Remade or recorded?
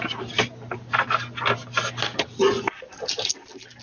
recorded